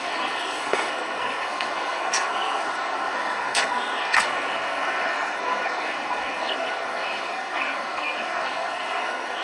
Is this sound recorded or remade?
remade